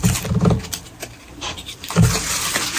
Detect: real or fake real